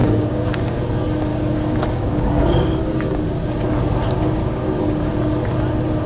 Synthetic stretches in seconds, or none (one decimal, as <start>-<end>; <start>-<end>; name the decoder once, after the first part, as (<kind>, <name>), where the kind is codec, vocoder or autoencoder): 0.0-0.8 (codec, DAC); 1.3-3.2; 4.4-5.1